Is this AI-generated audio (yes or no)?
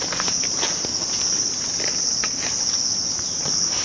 no